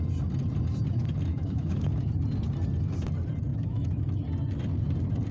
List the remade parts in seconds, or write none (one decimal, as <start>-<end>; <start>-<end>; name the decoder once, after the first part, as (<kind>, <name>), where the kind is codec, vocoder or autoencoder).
1.3-1.8 (autoencoder, DAC-VAE); 3.5-4.0